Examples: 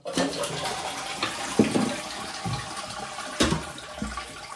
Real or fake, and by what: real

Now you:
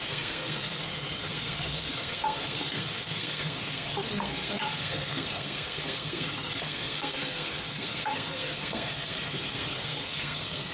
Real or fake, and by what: fake, codec, SNAC